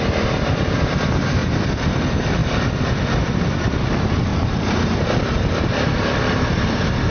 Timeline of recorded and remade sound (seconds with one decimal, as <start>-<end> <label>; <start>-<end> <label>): 0.0-1.4 remade; 1.4-2.0 recorded; 2.0-2.4 remade; 2.4-3.0 recorded; 3.0-4.3 remade; 4.3-5.2 recorded; 5.2-7.1 remade